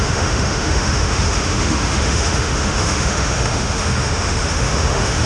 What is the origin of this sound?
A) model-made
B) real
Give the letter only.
A